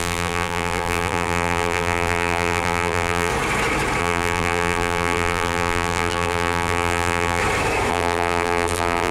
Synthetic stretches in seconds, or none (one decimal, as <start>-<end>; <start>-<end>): 0.0-3.3; 4.0-7.4; 7.9-9.1